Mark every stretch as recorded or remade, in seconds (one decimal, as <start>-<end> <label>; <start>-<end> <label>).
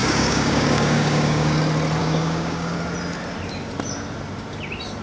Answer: 0.0-1.6 remade; 1.6-2.0 recorded; 2.0-2.8 remade; 2.8-5.0 recorded